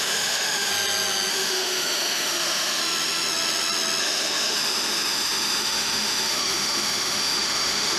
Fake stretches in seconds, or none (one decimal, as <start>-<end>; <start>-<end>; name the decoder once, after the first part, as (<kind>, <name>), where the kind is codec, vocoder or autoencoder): 0.0-0.7 (autoencoder, DAC-VAE); 1.3-2.8; 4.0-8.0